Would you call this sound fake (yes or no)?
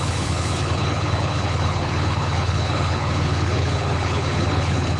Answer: yes